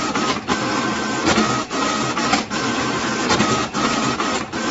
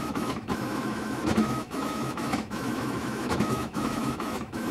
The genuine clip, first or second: first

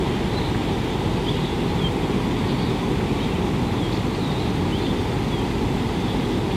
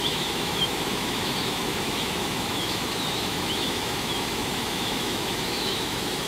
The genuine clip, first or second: first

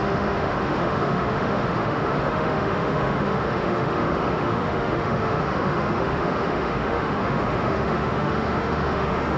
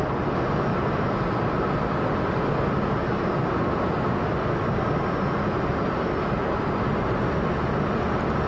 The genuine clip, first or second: second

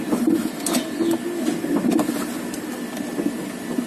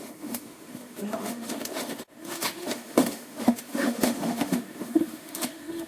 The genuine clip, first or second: first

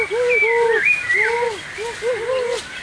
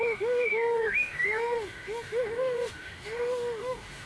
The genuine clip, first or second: first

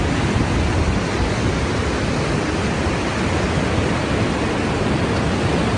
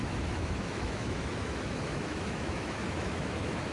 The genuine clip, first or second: first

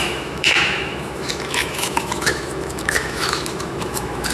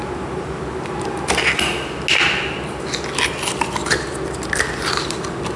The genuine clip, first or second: second